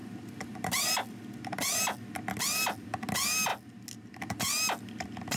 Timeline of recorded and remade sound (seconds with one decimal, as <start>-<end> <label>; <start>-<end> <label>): 0.0-5.4 recorded